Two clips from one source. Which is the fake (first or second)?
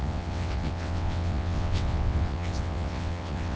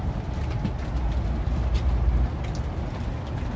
first